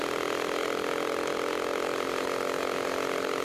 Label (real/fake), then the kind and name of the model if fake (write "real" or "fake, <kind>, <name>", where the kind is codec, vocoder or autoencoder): real